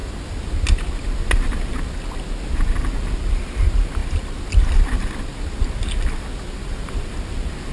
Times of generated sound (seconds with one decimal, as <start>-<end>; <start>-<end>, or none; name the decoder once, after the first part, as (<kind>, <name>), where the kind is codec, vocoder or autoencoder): 0.0-0.5 (vocoder, BigVGAN v2); 4.0-7.3